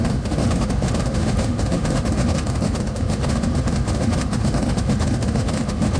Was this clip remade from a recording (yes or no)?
yes